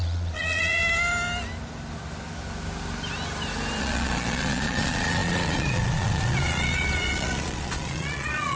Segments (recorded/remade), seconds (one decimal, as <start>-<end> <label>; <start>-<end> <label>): 0.0-0.8 remade; 0.8-3.8 recorded; 3.8-8.6 remade